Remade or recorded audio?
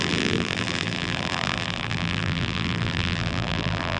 remade